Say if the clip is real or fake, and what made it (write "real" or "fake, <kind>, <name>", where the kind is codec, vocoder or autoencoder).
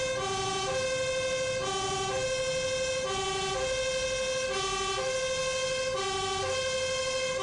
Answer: real